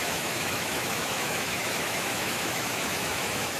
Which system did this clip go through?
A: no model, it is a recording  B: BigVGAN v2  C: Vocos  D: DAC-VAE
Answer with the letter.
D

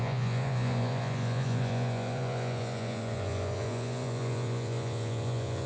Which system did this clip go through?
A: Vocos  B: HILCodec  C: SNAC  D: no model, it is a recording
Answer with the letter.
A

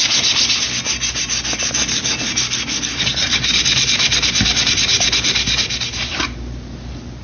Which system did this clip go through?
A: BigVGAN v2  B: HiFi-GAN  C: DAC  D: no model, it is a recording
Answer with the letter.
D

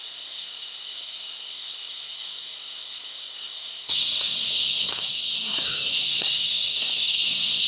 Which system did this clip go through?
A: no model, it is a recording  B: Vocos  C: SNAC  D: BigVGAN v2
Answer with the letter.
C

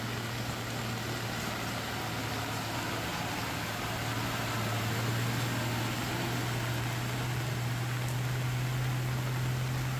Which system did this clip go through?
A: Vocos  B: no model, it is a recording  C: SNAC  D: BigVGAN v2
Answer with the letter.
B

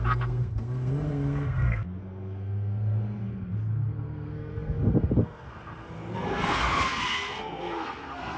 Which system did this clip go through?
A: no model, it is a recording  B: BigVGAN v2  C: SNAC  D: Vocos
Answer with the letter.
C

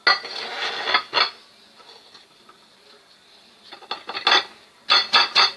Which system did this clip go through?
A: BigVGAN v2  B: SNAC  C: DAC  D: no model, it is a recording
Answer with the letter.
D